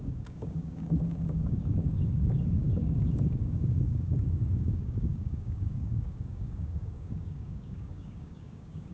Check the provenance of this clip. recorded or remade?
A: remade